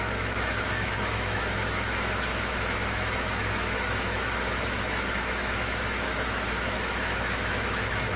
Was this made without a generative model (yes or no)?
no